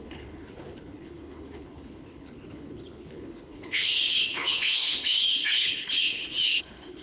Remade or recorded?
remade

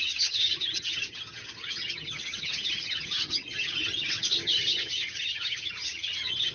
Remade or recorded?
remade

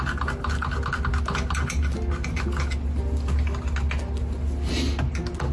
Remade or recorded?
recorded